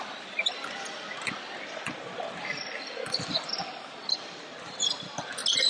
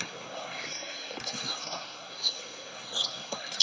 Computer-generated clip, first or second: second